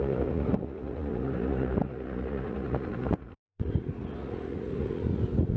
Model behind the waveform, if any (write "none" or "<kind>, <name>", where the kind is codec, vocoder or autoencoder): vocoder, Vocos